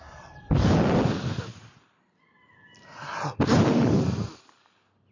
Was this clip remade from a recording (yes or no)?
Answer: no